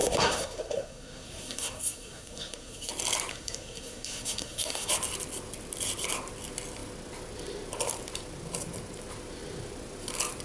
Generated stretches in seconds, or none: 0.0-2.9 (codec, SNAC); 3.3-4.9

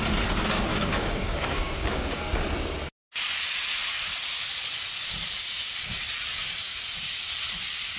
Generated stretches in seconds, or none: 0.7-2.2 (codec, DAC)

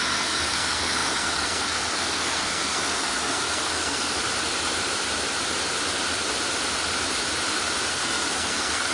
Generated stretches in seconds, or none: 0.0-4.2 (codec, SNAC); 7.9-8.9

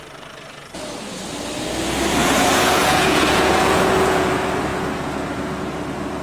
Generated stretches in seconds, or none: 2.2-4.3 (vocoder, Vocos)

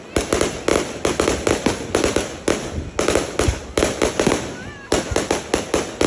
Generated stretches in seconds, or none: none

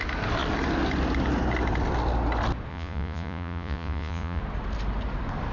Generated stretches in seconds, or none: 2.7-4.4 (vocoder, Vocos)

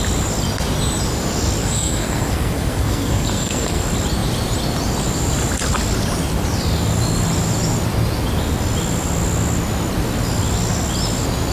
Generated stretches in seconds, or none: 1.6-3.8 (codec, SNAC)

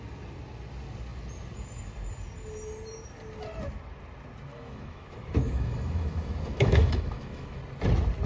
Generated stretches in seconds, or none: 4.5-7.6 (autoencoder, DAC-VAE)